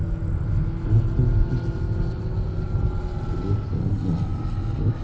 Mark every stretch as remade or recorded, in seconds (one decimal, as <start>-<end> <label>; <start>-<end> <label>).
0.0-5.0 recorded